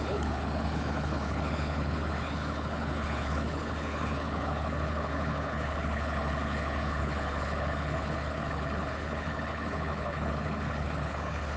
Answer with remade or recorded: remade